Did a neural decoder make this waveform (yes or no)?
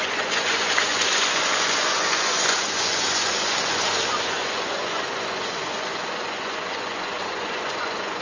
yes